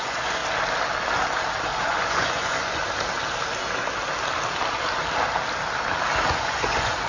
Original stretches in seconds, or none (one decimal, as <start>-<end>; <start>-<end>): 0.4-1.8; 2.8-6.3